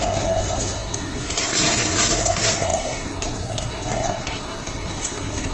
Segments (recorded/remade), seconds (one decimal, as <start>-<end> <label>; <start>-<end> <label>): 0.0-5.5 remade